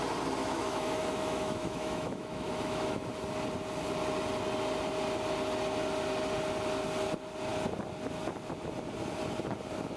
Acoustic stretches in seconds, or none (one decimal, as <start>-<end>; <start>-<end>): 0.0-0.4; 3.1-10.0